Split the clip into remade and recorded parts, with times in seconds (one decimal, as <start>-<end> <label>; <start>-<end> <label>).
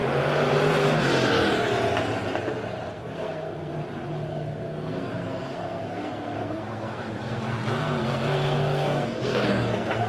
0.0-2.9 recorded; 2.9-3.7 remade; 3.7-4.3 recorded; 4.3-10.1 remade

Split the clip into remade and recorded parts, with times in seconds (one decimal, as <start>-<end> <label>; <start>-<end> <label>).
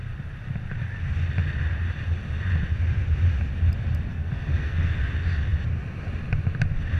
0.0-4.1 recorded; 4.1-5.1 remade; 5.1-7.0 recorded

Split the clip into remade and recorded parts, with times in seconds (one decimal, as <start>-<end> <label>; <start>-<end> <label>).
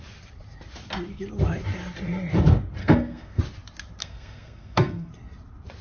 0.0-2.8 recorded; 2.8-3.4 remade; 3.4-4.0 recorded; 4.0-5.1 remade; 5.1-5.8 recorded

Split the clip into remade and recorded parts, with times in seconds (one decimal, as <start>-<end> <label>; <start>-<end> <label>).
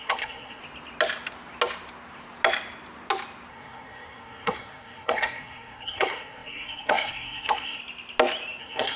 0.0-0.6 remade; 0.6-3.5 recorded; 3.5-7.8 remade; 7.8-8.6 recorded; 8.6-9.0 remade